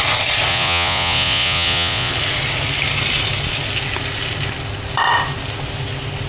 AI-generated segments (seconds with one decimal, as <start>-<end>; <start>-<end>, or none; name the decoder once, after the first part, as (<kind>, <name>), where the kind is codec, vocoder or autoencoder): 0.5-2.1 (vocoder, Vocos)